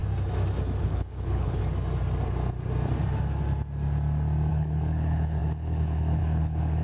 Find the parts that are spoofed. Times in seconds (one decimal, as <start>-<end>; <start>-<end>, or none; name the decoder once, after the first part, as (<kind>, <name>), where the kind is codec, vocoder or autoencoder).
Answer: 0.8-1.6 (codec, HILCodec); 4.5-6.8